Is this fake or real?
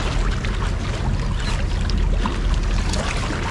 real